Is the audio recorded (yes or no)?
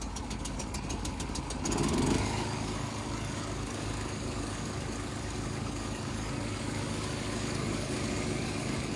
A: no